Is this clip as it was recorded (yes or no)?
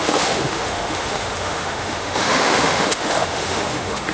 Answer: no